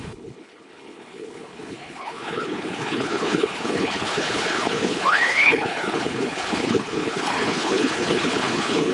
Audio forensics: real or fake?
fake